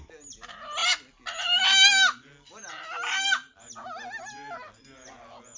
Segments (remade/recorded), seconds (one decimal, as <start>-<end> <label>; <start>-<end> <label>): 0.0-5.6 recorded

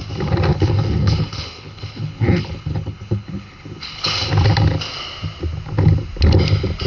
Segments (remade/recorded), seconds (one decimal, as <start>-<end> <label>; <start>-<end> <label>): 0.0-0.5 recorded; 0.5-4.3 remade; 4.3-6.9 recorded

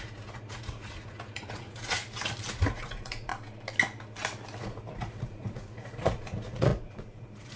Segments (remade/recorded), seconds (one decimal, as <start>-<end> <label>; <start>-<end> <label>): 0.0-2.0 remade; 2.0-2.5 recorded; 2.5-3.3 remade; 3.3-4.6 recorded; 4.6-7.6 remade

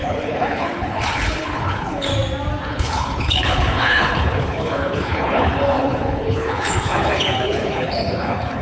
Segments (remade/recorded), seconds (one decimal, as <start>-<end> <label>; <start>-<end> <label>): 0.0-2.1 remade; 2.1-2.7 recorded; 2.7-8.6 remade

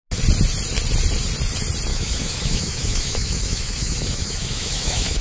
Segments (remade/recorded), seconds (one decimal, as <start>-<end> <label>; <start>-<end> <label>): 0.0-1.9 recorded; 1.9-5.2 remade

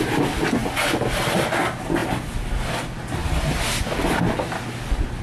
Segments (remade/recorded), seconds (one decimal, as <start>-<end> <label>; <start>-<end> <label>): 0.0-5.2 recorded